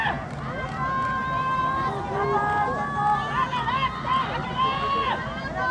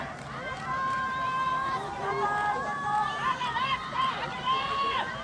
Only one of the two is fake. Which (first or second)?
second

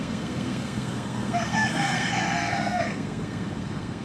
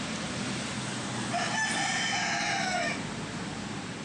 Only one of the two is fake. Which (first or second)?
first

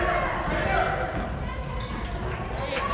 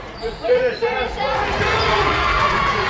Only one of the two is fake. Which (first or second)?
second